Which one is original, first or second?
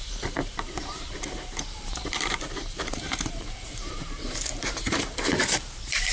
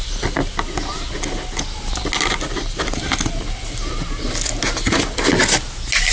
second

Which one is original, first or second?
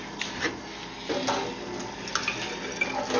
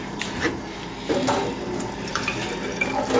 first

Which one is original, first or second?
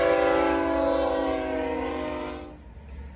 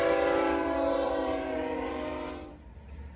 first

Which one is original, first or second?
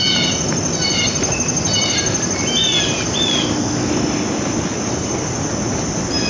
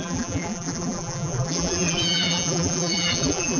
first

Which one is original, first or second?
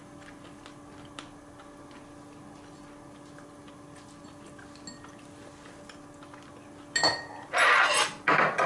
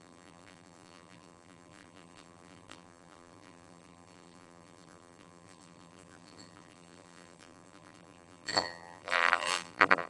first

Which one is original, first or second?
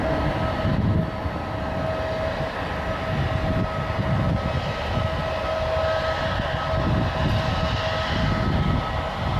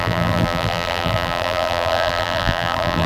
first